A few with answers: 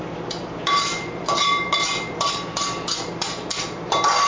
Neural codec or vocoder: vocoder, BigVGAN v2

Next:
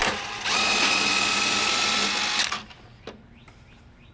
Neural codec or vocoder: none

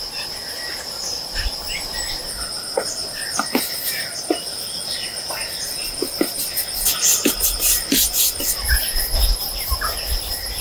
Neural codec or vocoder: vocoder, BigVGAN v2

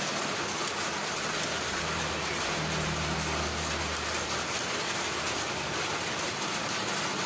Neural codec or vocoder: none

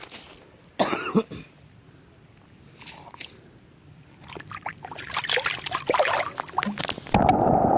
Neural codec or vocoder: none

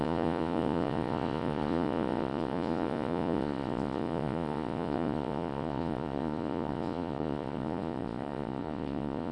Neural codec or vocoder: vocoder, Vocos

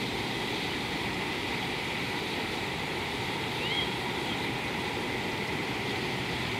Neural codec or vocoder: vocoder, BigVGAN v2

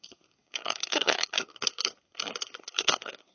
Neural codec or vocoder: codec, SNAC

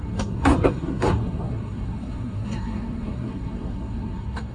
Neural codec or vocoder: codec, SNAC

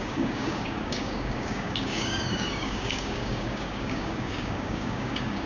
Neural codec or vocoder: codec, DAC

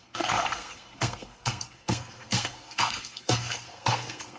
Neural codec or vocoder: codec, SNAC